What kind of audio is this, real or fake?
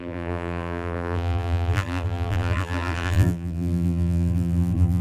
fake